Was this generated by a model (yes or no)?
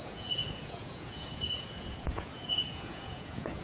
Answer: yes